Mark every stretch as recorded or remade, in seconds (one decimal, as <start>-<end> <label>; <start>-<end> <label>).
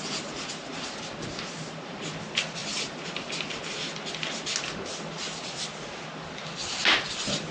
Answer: 0.0-7.5 recorded